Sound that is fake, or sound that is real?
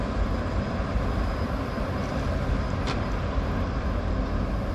real